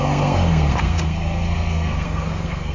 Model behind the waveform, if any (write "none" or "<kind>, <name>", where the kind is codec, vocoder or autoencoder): codec, SNAC